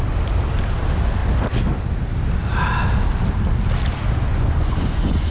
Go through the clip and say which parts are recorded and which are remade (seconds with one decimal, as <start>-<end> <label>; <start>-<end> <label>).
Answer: 0.0-4.3 recorded; 4.3-5.3 remade